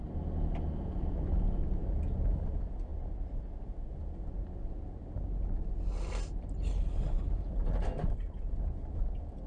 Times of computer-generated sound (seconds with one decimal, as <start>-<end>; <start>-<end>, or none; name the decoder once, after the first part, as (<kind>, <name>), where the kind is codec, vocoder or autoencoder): none